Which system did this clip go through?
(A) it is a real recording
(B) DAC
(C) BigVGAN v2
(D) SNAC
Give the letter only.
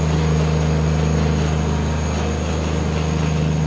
A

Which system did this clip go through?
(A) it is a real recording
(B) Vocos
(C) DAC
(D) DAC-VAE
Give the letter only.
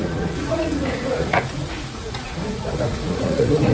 B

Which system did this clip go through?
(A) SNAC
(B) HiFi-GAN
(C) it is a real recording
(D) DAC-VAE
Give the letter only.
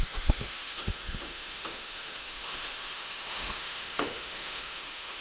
D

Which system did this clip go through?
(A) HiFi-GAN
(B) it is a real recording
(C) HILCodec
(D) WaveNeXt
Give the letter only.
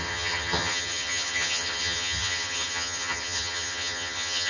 A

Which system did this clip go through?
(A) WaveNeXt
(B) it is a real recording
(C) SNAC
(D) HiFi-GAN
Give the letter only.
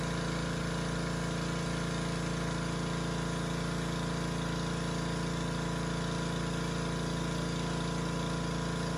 B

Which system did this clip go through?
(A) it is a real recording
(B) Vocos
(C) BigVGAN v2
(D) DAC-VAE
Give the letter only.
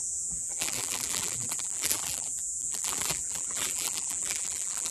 C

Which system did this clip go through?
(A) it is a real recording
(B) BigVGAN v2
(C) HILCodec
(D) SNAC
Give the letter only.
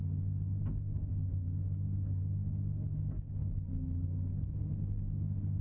A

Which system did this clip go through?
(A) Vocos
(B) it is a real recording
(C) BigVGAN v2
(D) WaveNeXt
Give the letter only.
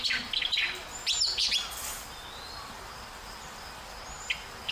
B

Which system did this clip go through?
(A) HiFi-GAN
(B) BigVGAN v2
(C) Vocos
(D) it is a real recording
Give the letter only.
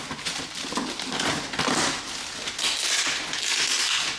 D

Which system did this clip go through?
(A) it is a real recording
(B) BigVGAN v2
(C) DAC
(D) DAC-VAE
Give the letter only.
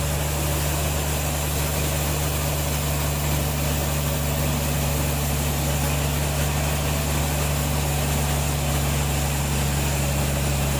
A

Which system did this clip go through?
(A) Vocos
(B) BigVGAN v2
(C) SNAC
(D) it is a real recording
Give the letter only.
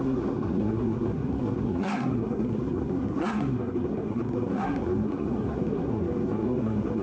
C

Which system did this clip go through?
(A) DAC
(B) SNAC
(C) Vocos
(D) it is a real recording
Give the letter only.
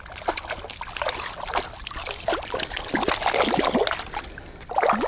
D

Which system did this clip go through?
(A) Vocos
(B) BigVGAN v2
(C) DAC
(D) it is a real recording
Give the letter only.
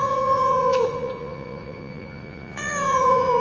A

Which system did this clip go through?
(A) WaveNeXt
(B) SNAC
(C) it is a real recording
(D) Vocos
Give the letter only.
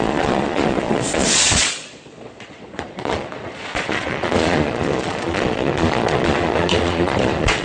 D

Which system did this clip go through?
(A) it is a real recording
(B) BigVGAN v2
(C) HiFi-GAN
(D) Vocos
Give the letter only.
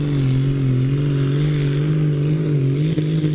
A